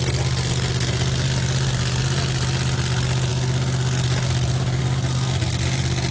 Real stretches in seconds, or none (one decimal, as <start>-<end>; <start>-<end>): 0.0-6.1